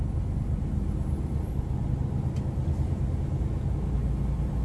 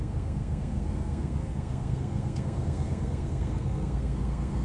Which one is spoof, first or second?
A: second